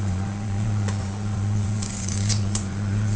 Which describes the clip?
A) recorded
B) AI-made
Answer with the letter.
B